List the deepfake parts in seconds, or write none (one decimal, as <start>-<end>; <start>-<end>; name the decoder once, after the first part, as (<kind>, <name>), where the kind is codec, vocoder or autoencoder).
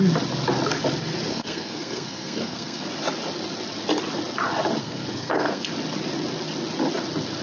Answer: 1.3-2.9 (codec, SNAC); 4.8-5.7